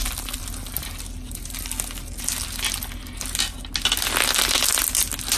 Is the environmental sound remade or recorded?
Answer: recorded